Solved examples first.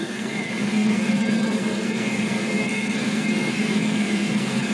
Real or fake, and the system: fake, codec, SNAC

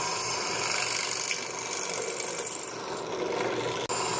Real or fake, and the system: real